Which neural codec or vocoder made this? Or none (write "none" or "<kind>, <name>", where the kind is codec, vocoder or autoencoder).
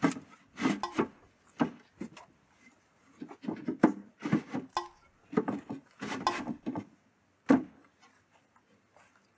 none